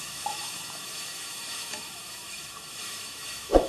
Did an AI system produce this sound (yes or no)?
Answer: yes